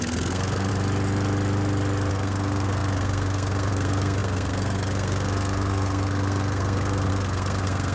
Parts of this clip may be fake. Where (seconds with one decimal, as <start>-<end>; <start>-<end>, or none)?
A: 0.0-0.7; 2.1-7.9